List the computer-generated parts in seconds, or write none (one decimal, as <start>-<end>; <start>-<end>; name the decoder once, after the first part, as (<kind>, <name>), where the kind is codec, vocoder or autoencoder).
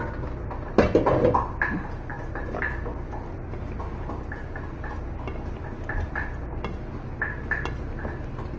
none